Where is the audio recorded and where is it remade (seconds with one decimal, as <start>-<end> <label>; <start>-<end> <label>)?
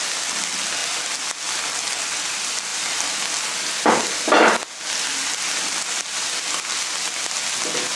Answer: 0.0-8.0 recorded